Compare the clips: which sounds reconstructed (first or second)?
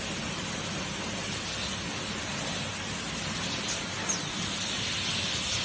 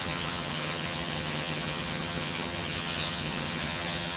second